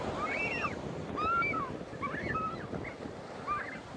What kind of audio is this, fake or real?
real